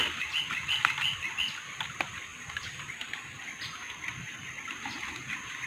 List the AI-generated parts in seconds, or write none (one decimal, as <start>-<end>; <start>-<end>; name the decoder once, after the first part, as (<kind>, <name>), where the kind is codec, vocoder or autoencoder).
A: none